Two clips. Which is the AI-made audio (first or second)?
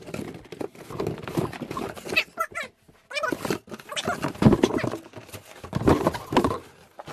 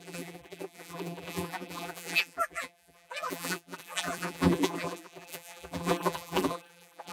second